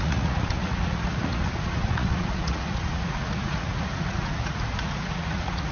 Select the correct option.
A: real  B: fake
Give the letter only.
B